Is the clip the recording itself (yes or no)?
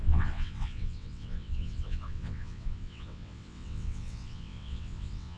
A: no